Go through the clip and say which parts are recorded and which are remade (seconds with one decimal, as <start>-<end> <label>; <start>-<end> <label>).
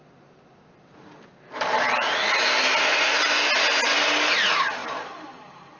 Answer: 0.0-5.8 recorded